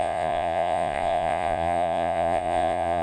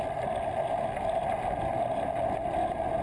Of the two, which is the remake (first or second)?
first